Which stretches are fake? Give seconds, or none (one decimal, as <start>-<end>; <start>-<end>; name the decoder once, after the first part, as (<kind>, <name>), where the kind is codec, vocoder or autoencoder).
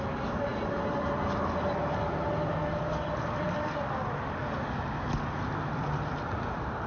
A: 0.0-0.5 (vocoder, BigVGAN v2); 3.2-4.4; 5.3-6.9